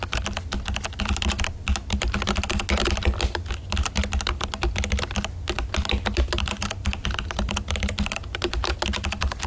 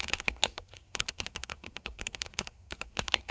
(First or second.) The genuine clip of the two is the first